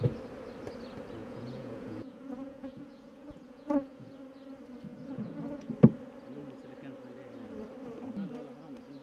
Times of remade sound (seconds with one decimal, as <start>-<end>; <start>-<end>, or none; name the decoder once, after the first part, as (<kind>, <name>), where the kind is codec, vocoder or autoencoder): 1.2-4.1 (vocoder, Vocos); 4.9-5.7